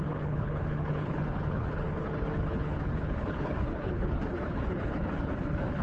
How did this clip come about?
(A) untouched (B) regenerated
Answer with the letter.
B